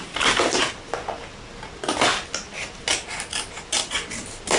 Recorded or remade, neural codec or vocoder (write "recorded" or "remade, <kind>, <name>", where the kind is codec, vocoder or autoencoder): recorded